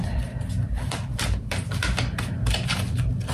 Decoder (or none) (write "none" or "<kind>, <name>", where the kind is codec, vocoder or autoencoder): vocoder, BigVGAN v2